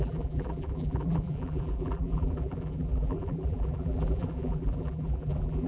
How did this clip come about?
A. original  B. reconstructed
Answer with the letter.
B